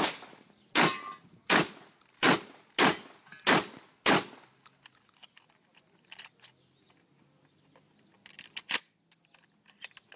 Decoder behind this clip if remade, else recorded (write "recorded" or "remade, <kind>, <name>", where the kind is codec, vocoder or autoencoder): recorded